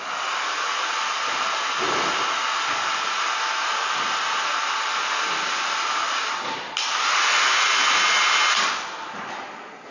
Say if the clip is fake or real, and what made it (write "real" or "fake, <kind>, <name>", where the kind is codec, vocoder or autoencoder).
real